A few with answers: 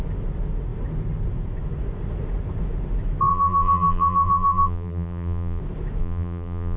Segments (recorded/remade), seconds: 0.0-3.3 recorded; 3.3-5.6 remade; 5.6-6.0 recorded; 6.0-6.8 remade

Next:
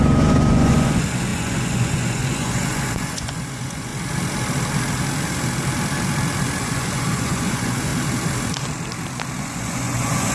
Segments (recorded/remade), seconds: 0.0-3.9 remade; 3.9-6.6 recorded; 6.6-7.9 remade; 7.9-9.4 recorded; 9.4-10.3 remade

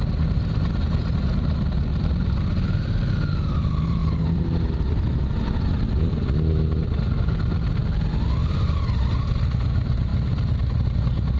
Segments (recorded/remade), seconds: 0.0-1.9 recorded; 1.9-3.0 remade; 3.0-11.4 recorded